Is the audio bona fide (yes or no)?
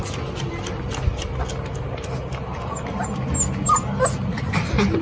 yes